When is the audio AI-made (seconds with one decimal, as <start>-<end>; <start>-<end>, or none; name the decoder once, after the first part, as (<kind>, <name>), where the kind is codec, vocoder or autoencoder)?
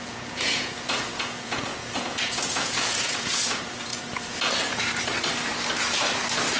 0.0-3.9 (vocoder, Vocos)